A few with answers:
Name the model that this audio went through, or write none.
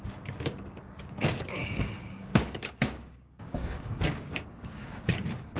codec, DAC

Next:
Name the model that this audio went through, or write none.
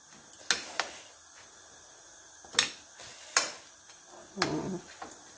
none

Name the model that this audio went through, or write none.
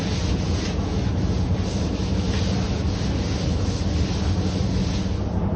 none